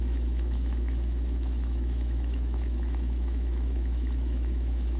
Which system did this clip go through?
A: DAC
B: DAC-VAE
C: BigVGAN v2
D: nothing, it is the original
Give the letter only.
B